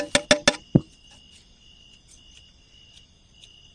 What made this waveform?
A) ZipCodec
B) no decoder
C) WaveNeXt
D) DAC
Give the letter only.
B